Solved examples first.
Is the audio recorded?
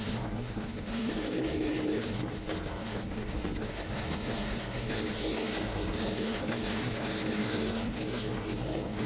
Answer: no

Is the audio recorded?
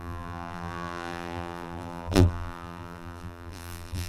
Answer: no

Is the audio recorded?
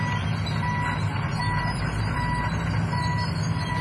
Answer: yes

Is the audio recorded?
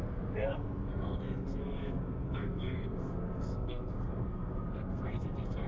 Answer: no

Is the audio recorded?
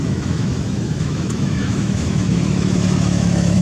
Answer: no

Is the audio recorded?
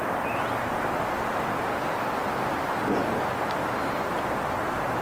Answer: yes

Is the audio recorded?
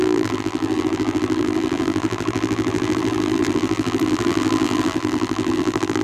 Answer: no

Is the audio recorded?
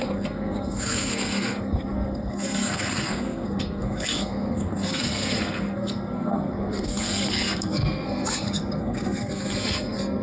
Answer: no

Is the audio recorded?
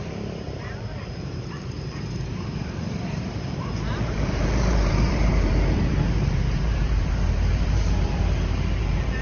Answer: no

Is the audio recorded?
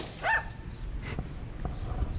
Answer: yes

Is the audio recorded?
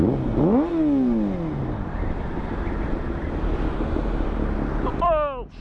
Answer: yes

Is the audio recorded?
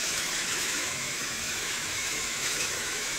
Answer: no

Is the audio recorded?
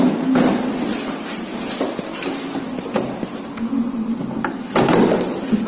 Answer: no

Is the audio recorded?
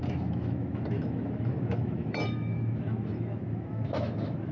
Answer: no